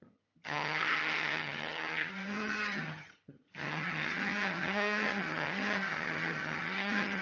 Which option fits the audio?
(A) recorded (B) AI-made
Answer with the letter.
B